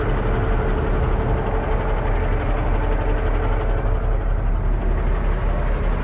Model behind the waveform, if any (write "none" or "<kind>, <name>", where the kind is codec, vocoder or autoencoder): none